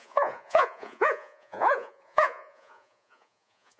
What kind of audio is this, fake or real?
fake